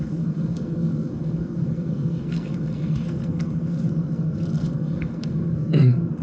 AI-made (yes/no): yes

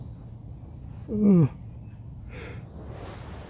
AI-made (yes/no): no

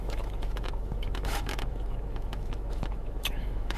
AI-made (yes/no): yes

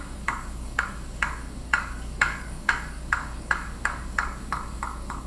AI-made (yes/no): yes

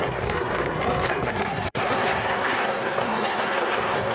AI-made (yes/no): yes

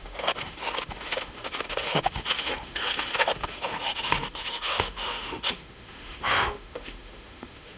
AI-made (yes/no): yes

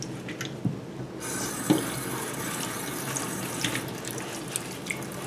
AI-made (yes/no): no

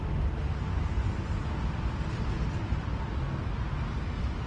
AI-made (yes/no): no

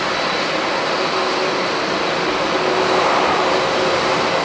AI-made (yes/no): no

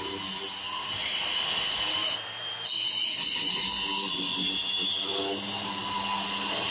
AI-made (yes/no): no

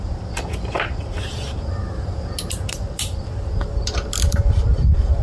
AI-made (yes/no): no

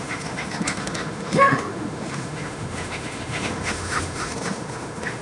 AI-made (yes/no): yes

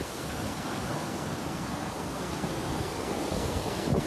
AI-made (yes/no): yes